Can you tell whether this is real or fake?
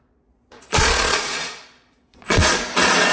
fake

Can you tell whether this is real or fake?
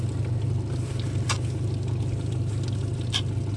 real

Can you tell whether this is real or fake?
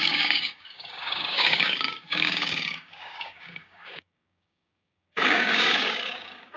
fake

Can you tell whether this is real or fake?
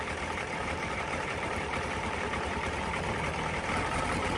fake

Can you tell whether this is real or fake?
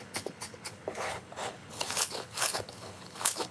fake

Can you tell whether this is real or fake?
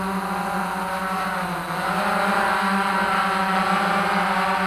real